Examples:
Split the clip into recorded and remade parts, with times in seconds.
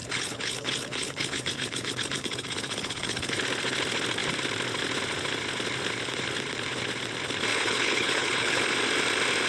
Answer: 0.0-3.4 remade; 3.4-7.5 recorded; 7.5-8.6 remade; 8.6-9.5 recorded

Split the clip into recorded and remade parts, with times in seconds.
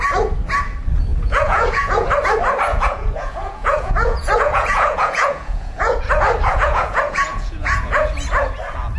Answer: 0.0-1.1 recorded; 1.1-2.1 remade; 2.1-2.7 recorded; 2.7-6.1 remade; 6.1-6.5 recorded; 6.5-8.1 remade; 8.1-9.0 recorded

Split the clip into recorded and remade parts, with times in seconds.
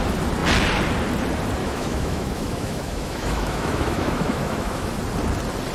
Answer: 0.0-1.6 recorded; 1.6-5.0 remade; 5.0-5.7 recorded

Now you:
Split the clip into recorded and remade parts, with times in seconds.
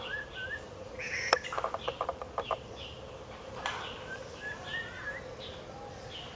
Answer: 0.0-6.4 recorded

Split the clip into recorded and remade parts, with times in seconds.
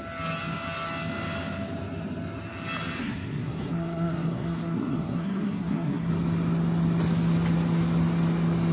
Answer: 0.0-3.0 recorded; 3.0-6.1 remade; 6.1-8.7 recorded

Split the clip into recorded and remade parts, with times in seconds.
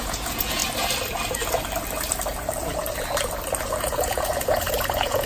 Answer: 0.0-0.6 remade; 0.6-3.8 recorded; 3.8-5.3 remade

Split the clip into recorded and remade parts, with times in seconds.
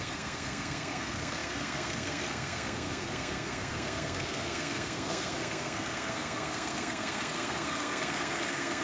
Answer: 0.0-8.8 remade